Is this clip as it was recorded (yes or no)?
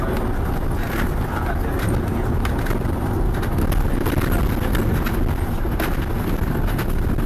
yes